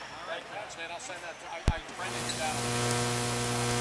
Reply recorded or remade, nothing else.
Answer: recorded